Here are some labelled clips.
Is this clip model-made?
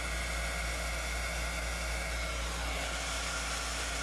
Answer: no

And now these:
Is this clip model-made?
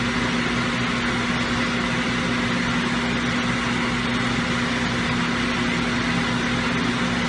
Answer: no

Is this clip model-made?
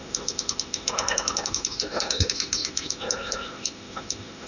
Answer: yes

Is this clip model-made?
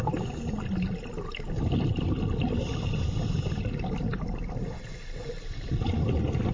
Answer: no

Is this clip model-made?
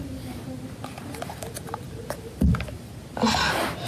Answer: no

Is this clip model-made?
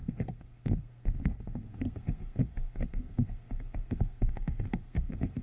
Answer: yes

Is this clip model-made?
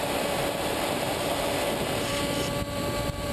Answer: yes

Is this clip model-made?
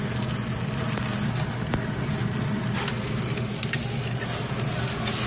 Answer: no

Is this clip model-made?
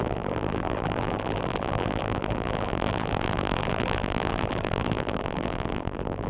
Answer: yes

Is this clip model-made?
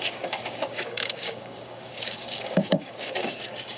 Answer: yes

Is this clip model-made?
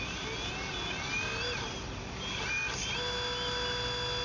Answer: no